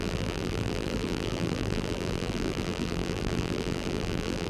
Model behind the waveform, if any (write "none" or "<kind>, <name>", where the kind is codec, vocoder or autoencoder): vocoder, BigVGAN v2